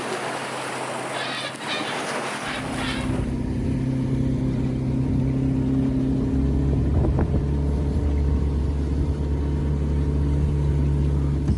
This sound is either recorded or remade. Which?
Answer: recorded